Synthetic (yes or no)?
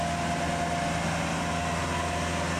no